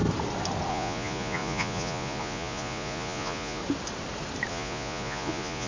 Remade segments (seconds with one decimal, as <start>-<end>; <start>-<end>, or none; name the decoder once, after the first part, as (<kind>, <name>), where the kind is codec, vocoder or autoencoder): 0.7-3.6 (vocoder, Vocos); 4.5-5.7